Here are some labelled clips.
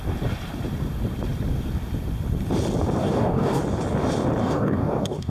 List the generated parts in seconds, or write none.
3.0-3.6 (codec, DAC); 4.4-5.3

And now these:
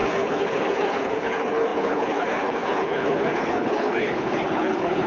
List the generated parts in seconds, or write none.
0.0-5.1 (codec, HILCodec)

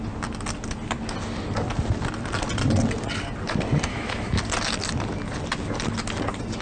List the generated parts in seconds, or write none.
3.9-4.4 (autoencoder, DAC-VAE)

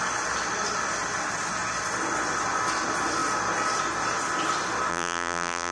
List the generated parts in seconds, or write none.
4.9-5.7 (vocoder, BigVGAN v2)